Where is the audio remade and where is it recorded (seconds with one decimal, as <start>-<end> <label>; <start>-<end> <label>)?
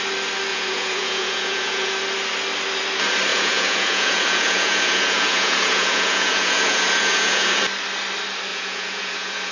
0.0-0.5 recorded; 0.5-1.9 remade; 1.9-3.3 recorded; 3.3-7.6 remade; 7.6-8.5 recorded; 8.5-9.5 remade